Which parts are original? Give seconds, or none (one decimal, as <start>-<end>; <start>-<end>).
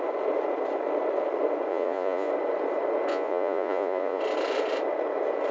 0.0-1.7; 2.3-3.1; 4.2-5.5